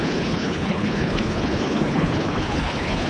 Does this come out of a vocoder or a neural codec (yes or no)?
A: yes